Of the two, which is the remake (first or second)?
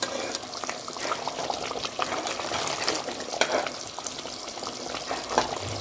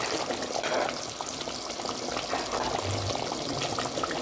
first